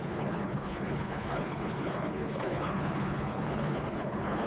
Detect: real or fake fake